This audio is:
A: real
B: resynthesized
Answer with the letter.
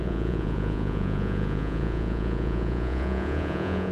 B